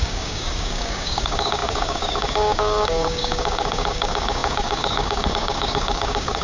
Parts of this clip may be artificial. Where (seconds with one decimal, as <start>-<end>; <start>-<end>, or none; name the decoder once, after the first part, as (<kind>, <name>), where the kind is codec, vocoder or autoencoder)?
0.0-6.4 (codec, DAC)